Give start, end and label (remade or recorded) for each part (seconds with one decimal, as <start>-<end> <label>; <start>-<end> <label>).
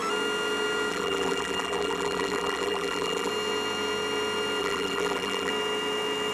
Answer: 0.0-0.9 recorded; 0.9-3.3 remade; 3.3-4.6 recorded; 4.6-5.5 remade; 5.5-6.3 recorded